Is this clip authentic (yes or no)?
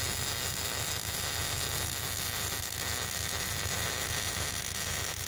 yes